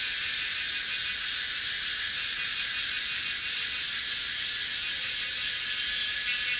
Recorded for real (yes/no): yes